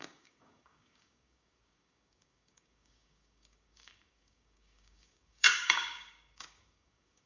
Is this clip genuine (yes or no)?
no